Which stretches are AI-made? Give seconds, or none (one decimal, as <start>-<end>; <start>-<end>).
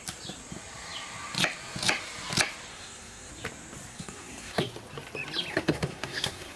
2.7-3.3; 3.9-4.7; 5.5-6.6